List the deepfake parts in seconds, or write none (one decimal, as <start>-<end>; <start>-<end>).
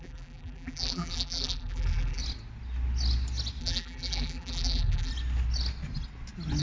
0.0-2.2; 3.6-5.1